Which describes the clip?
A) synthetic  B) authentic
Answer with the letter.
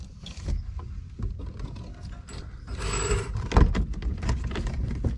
B